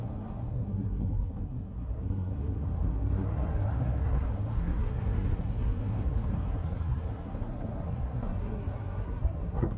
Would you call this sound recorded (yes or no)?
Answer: no